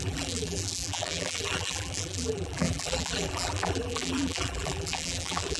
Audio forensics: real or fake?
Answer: fake